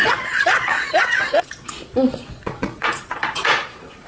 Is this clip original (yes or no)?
no